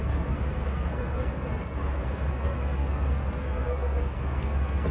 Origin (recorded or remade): remade